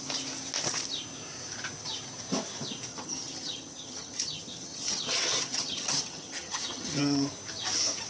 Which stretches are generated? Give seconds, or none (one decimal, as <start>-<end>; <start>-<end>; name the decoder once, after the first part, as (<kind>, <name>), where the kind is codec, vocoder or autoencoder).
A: 2.9-7.0 (vocoder, HiFi-GAN)